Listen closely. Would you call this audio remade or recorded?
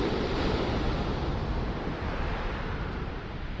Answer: recorded